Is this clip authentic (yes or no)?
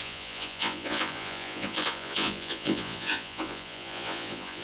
no